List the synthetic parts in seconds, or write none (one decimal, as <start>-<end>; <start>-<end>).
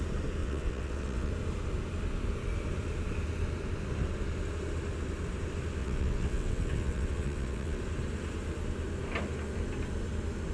0.4-1.3; 5.8-7.8